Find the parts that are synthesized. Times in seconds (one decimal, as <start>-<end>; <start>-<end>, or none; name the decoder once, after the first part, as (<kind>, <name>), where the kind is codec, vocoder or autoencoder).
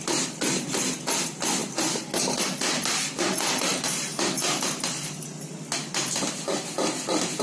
none